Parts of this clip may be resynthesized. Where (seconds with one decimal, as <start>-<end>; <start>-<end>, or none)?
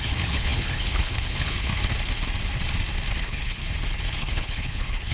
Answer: 0.0-1.8; 3.2-3.6; 4.2-5.1